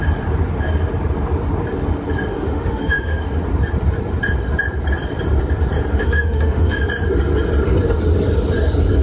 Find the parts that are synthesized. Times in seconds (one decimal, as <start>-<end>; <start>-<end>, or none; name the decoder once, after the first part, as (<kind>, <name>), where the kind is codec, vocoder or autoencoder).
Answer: 2.3-3.2 (autoencoder, DAC-VAE); 6.0-6.8